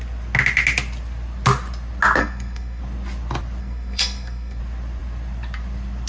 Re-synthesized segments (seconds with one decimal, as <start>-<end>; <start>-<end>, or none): 2.2-2.8; 3.6-4.6